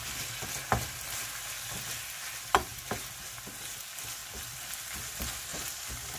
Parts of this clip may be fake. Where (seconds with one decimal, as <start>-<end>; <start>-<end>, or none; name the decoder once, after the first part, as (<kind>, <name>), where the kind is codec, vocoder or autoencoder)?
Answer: 4.2-5.0 (vocoder, BigVGAN v2); 5.5-6.2